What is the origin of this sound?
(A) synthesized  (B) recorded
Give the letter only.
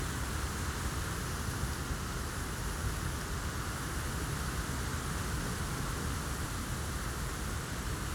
B